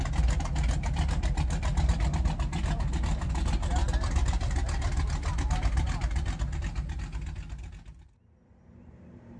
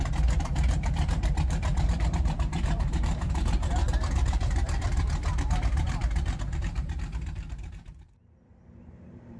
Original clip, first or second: first